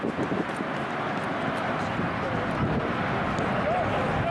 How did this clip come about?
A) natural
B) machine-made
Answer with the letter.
A